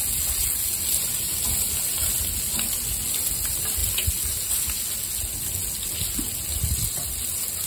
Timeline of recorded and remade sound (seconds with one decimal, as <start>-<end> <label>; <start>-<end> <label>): 0.0-7.7 recorded